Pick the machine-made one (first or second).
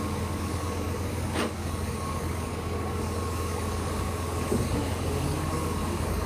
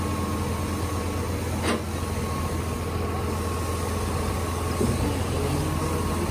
first